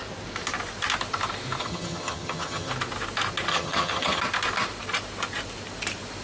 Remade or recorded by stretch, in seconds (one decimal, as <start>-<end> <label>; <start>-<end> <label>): 0.0-1.6 recorded; 1.6-2.7 remade; 2.7-3.5 recorded; 3.5-4.2 remade; 4.2-6.2 recorded